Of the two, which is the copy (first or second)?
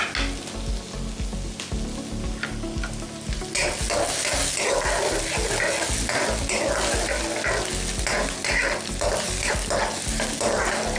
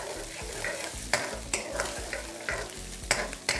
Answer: second